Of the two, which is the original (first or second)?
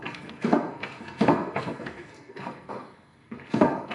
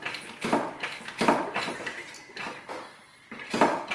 second